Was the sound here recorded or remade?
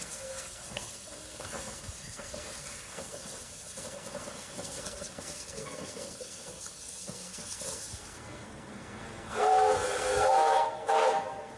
remade